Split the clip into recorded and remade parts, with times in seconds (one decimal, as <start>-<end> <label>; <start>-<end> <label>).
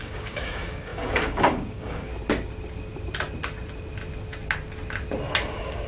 0.0-2.1 remade; 2.1-5.5 recorded; 5.5-5.9 remade